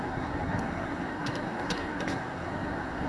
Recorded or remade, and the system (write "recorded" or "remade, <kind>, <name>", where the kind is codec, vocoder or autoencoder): remade, codec, SNAC